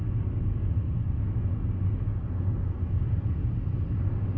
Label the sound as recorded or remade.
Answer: recorded